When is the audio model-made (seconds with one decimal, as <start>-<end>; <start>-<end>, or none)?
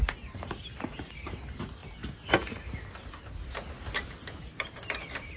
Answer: none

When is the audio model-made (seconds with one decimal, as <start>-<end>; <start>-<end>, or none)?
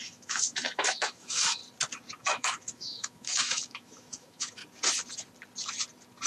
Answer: 0.0-1.6; 2.2-4.6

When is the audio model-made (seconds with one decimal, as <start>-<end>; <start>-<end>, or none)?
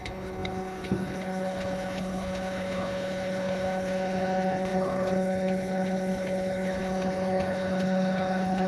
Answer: 0.0-8.7